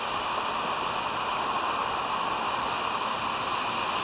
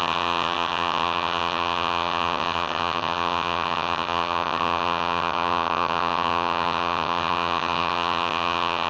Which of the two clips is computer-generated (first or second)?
second